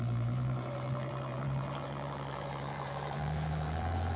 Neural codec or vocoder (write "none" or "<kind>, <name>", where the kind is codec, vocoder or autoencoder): vocoder, BigVGAN v2